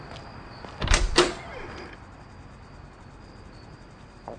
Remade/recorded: recorded